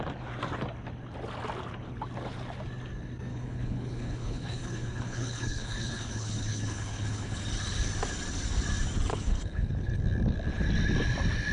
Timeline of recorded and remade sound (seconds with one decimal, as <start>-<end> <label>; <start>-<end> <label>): 0.0-3.3 recorded; 3.3-7.4 remade; 7.4-9.1 recorded; 9.1-10.0 remade; 10.0-11.5 recorded